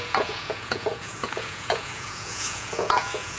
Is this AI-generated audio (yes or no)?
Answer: yes